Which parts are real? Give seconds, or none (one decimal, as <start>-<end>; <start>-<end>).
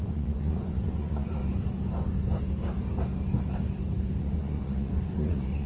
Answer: 1.4-4.2